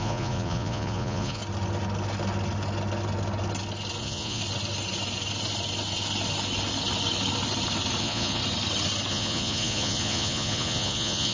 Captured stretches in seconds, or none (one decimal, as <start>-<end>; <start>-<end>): 1.4-4.0; 4.4-8.0; 8.4-9.1